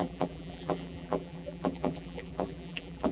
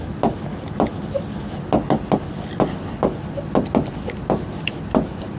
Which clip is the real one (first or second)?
second